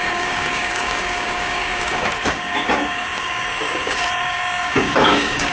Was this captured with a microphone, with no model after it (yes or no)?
no